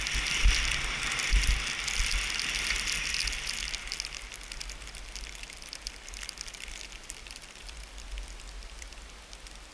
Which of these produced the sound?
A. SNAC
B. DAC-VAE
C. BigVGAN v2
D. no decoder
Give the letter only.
D